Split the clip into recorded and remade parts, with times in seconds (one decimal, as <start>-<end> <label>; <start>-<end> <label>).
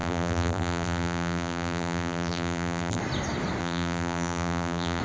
0.0-3.0 remade; 3.0-3.6 recorded; 3.6-5.0 remade